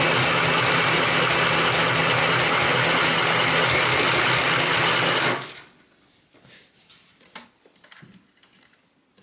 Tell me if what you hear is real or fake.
real